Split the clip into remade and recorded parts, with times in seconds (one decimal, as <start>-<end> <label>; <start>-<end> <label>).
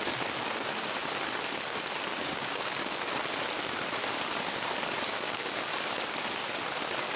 0.0-2.1 recorded; 2.1-2.9 remade; 2.9-5.1 recorded; 5.1-5.7 remade; 5.7-7.2 recorded